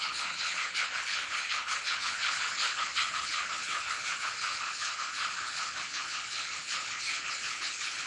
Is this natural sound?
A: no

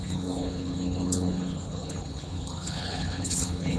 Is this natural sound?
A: no